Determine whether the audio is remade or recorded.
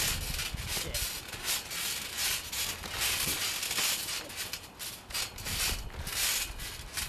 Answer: recorded